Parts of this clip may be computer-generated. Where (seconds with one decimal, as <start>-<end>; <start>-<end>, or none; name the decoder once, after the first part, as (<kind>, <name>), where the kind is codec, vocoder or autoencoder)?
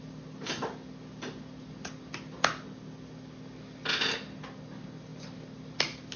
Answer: none